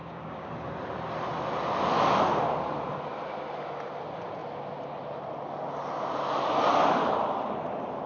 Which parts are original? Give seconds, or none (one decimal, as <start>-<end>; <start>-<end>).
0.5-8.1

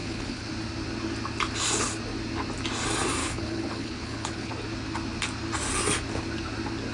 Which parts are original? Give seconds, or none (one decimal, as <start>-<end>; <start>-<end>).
0.5-3.2; 4.5-6.9

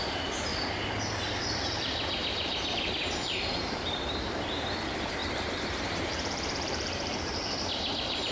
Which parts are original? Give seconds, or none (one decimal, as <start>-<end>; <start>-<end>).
0.5-1.6

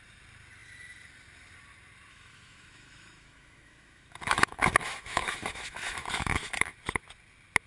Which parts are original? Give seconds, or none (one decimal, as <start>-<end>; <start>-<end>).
0.0-2.1; 6.7-7.7